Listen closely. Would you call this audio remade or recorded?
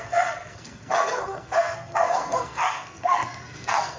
remade